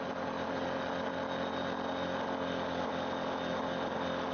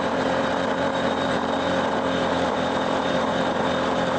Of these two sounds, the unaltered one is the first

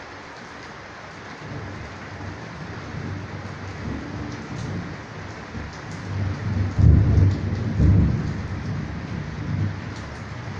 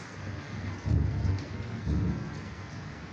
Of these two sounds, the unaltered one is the first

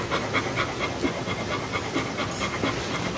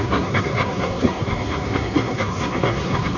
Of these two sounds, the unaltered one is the first